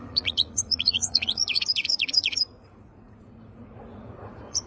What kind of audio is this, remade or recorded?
remade